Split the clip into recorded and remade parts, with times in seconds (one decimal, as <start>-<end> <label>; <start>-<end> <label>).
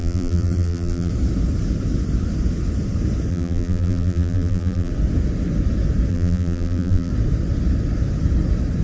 0.0-1.1 remade; 1.1-3.3 recorded; 3.3-4.9 remade; 4.9-6.1 recorded; 6.1-7.1 remade; 7.1-8.8 recorded